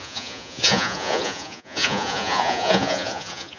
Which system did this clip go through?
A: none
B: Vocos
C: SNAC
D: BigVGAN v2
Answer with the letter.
B